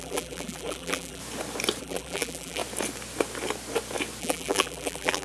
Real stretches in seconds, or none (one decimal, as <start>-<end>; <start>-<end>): 1.2-1.8; 2.6-4.2

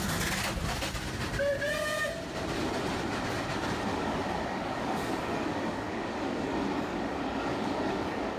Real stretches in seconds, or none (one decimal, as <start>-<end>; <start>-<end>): 0.0-3.9

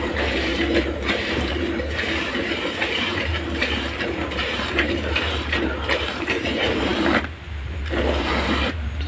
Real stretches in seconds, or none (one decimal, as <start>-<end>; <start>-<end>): none

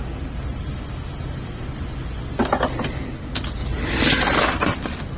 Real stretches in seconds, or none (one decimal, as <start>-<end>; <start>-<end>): 0.0-0.5; 3.0-3.6; 4.1-5.2

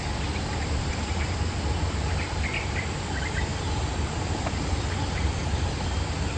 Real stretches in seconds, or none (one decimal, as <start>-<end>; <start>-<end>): 0.0-6.4

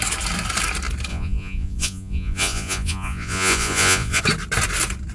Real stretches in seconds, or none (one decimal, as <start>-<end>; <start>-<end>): 0.0-1.1; 4.2-5.1

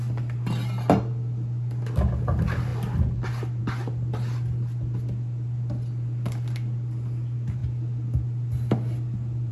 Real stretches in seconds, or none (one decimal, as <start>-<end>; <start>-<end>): 0.0-9.5

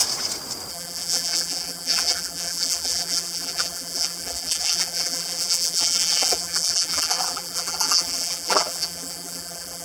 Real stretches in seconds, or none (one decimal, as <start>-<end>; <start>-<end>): 0.0-0.7